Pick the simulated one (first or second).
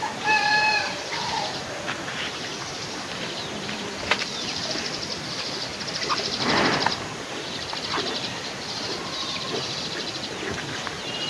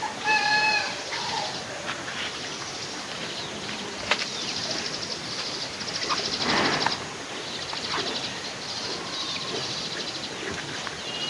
first